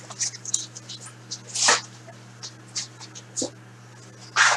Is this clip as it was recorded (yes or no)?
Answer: yes